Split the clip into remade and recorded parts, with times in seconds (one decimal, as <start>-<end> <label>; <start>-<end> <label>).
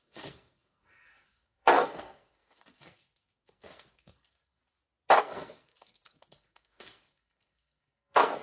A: 0.0-4.6 remade; 4.6-5.2 recorded; 5.2-8.4 remade